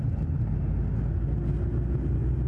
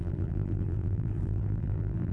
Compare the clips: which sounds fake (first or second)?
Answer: second